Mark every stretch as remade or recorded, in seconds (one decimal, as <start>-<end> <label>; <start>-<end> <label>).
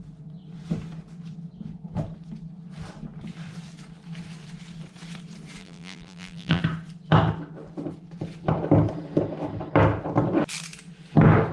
0.0-5.6 recorded; 5.6-6.6 remade; 6.6-11.5 recorded